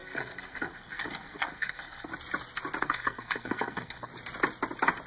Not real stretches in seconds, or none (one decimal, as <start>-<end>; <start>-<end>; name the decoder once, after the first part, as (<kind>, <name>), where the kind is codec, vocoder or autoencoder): 0.0-2.1 (codec, SNAC); 2.8-4.1